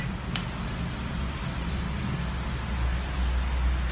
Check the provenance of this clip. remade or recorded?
recorded